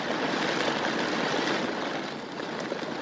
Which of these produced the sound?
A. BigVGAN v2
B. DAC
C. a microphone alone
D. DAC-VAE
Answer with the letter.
C